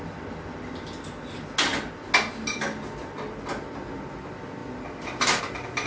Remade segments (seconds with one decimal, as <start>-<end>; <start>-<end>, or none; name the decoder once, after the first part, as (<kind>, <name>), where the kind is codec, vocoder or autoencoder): none